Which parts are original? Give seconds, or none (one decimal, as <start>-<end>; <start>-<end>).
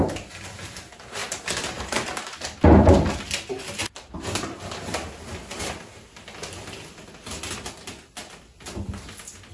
0.0-9.5